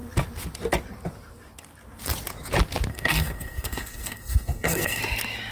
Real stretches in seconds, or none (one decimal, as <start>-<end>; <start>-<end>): 0.0-2.9; 5.0-5.5